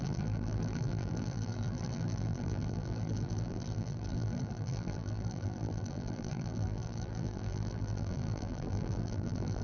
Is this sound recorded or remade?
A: remade